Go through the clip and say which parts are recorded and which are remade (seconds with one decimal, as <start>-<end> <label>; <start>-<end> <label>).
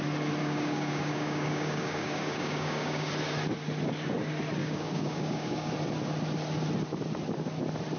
0.0-0.4 recorded; 0.4-3.1 remade; 3.1-4.6 recorded; 4.6-5.7 remade; 5.7-8.0 recorded